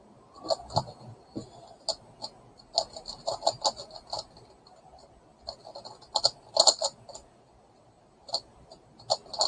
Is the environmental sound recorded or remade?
recorded